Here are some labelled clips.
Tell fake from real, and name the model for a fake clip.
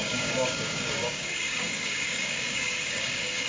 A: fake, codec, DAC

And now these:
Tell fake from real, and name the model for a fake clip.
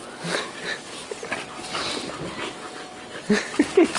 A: real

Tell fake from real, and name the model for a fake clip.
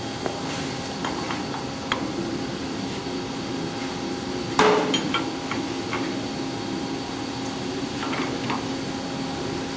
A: real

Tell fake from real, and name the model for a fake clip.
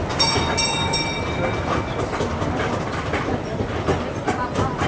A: real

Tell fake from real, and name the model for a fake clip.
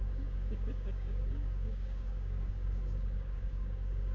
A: fake, codec, DAC